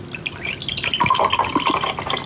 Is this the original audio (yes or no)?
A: yes